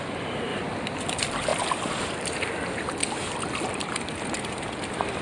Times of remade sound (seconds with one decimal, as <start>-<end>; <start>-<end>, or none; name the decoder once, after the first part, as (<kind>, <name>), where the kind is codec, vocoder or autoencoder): 0.0-0.5 (vocoder, BigVGAN v2); 1.1-1.5; 2.2-3.0; 4.5-5.2